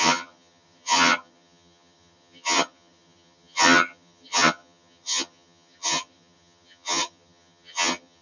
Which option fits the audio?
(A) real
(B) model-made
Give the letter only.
B